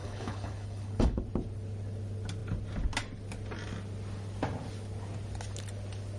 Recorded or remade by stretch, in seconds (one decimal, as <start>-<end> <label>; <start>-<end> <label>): 0.0-1.2 remade; 1.2-6.2 recorded